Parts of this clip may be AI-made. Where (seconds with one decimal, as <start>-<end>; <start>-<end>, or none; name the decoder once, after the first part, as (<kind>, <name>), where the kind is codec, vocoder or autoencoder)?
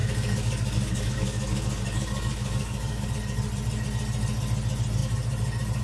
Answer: 0.0-3.1 (codec, DAC)